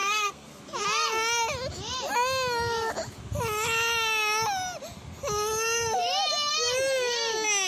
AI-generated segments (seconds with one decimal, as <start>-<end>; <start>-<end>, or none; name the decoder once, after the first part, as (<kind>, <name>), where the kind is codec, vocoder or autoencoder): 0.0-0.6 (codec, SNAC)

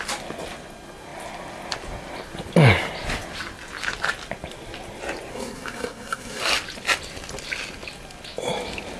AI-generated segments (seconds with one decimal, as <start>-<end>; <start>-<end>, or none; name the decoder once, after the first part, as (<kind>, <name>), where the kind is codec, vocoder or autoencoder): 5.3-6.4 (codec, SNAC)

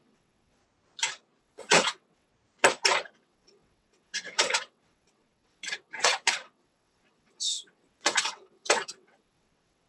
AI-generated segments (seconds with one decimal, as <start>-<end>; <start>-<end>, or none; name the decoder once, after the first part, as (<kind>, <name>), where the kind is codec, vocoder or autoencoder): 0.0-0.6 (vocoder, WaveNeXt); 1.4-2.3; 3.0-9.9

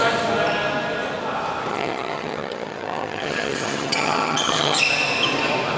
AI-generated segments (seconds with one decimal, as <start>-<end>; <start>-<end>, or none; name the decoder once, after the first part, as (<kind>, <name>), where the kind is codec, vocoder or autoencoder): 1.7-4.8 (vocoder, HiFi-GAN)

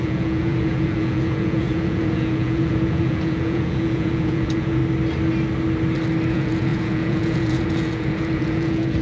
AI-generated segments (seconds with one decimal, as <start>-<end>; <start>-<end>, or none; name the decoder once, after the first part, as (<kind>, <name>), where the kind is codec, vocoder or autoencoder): 0.0-4.8 (vocoder, Vocos); 6.3-9.0

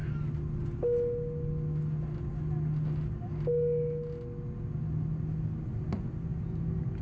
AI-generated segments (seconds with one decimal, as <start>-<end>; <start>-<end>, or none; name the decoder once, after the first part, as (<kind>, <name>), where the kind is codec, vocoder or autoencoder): none

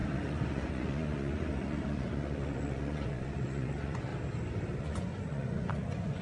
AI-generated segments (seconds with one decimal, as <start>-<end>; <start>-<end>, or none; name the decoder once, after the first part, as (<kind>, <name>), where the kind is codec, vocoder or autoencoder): 0.0-4.1 (vocoder, Vocos); 4.8-6.2

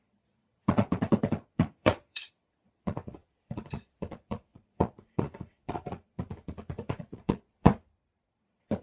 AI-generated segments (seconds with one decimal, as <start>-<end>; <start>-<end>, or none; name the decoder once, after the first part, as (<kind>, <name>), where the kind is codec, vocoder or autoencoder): 0.0-7.7 (vocoder, Vocos); 8.4-8.8